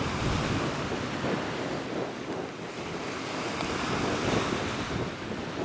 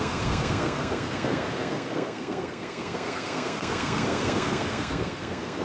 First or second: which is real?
first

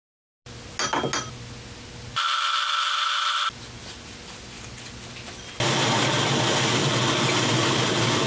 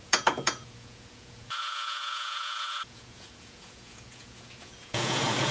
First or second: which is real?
first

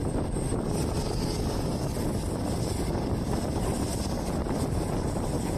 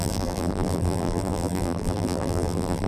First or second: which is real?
first